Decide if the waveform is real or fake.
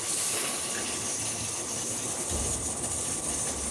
real